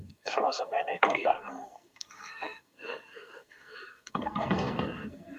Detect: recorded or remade remade